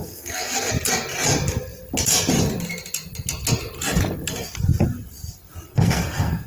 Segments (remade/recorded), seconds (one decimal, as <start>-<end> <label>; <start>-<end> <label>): 0.0-0.7 remade; 0.7-5.7 recorded; 5.7-6.5 remade